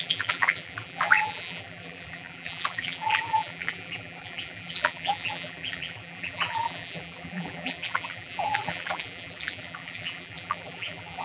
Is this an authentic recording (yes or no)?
no